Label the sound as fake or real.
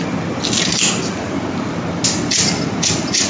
real